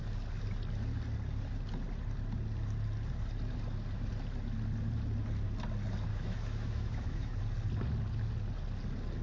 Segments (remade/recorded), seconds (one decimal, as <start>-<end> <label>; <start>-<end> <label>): 0.0-6.1 recorded; 6.1-7.4 remade; 7.4-9.2 recorded